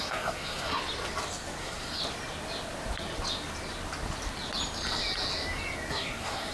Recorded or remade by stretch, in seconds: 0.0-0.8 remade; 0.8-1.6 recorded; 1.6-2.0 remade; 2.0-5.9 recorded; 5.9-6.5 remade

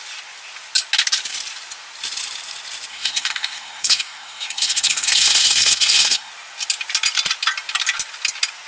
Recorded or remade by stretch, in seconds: 0.0-2.9 recorded; 2.9-6.3 remade; 6.3-8.7 recorded